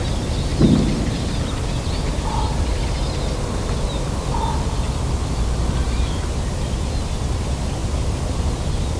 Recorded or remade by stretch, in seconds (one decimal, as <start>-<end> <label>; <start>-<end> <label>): 0.0-9.0 recorded